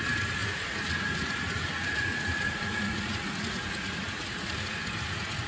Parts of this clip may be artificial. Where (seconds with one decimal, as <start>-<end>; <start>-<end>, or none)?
0.0-5.5